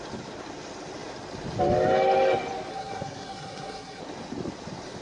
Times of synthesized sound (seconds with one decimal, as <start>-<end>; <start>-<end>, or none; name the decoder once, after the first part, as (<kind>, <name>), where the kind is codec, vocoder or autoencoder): 2.7-4.0 (codec, SNAC)